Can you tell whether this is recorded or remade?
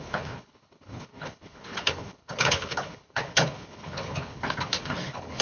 remade